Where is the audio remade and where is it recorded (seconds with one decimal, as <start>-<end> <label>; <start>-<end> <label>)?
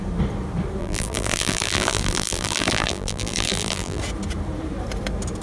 0.0-0.8 recorded; 0.8-4.0 remade; 4.0-5.4 recorded